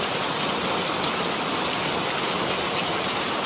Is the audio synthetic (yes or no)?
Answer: no